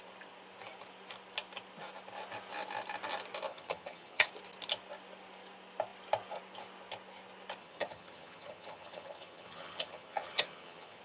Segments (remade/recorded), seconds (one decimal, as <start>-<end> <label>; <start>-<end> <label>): 0.0-3.5 recorded; 3.5-4.3 remade; 4.3-7.6 recorded; 7.6-11.0 remade